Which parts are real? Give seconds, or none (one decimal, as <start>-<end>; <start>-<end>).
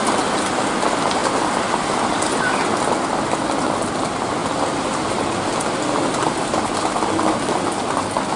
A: 0.0-8.4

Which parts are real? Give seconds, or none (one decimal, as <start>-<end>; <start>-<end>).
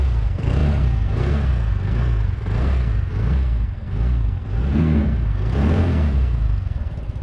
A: none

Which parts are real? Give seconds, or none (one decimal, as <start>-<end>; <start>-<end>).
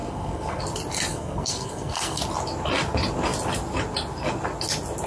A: 0.6-1.1; 2.2-5.1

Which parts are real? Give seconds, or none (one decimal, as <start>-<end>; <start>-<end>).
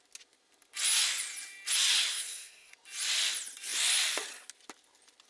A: 0.0-2.1; 2.7-5.3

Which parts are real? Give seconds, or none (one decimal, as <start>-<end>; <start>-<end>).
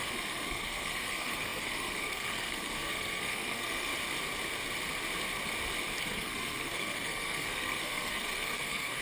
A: 3.9-6.0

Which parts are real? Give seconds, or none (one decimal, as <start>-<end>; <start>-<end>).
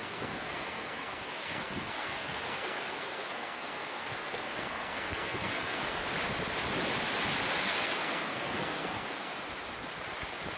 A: 6.0-7.6; 9.3-10.6